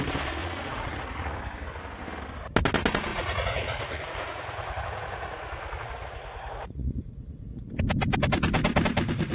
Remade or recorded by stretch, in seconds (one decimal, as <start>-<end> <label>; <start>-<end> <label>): 0.0-0.4 recorded; 0.4-1.4 remade; 1.4-3.1 recorded; 3.1-7.7 remade; 7.7-9.3 recorded